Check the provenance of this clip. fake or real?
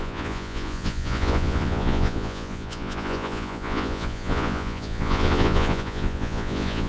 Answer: fake